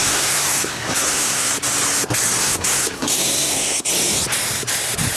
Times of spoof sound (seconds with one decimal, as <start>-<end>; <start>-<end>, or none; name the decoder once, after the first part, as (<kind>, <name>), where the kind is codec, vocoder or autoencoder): 0.0-1.5 (codec, SNAC); 2.4-3.9